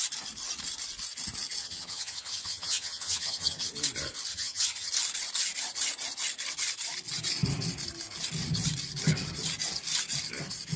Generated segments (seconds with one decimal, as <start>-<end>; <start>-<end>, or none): 1.6-3.7; 4.3-4.9